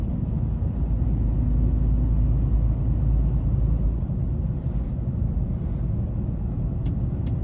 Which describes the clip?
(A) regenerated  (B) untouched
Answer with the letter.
B